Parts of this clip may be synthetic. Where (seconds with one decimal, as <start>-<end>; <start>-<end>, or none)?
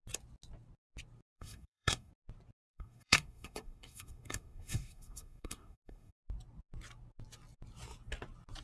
1.3-2.1; 2.7-6.1